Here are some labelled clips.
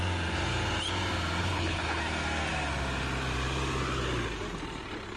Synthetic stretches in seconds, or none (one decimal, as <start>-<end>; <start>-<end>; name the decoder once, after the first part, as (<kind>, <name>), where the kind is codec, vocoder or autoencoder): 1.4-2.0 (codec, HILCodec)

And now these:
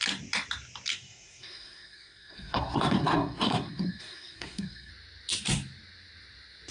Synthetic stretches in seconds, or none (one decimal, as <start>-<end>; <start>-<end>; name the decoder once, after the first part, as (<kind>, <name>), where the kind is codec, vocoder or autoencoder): 0.9-4.9 (codec, SNAC)

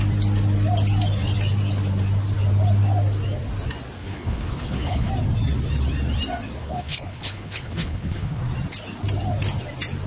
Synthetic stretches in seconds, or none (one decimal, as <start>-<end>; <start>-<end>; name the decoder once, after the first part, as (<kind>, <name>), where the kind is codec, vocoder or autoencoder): 4.0-5.1 (codec, HILCodec); 6.6-8.4